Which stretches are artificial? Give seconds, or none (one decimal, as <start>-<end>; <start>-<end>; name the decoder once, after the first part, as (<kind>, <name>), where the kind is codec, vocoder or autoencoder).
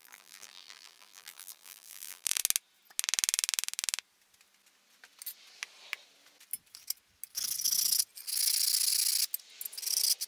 0.0-2.4 (vocoder, BigVGAN v2)